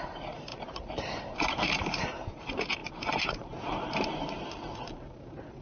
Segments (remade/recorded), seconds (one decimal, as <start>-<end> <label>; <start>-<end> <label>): 0.0-5.6 remade